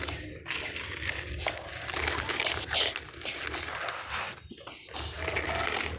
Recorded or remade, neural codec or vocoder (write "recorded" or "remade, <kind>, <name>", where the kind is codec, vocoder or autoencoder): recorded